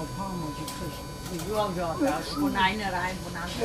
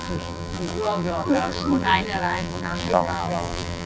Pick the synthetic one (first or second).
second